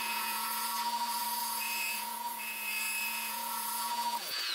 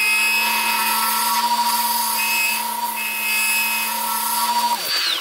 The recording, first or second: second